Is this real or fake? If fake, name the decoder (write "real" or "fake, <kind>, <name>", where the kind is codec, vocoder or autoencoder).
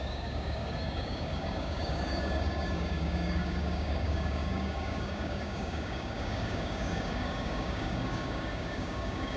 fake, codec, DAC